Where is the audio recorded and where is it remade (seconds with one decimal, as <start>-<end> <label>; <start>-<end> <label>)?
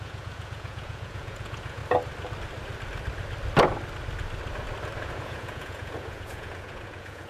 0.0-1.8 remade; 1.8-5.1 recorded; 5.1-7.3 remade